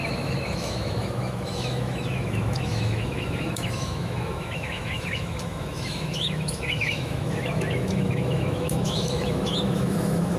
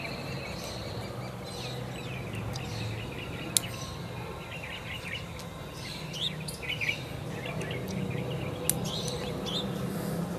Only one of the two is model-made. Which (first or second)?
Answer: first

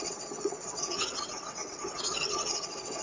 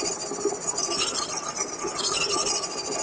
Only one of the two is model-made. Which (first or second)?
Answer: first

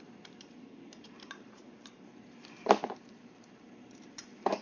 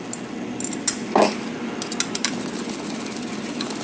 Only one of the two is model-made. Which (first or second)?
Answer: first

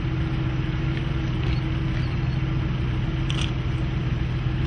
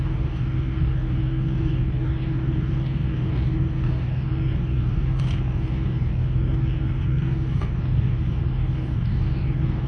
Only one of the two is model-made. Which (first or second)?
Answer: second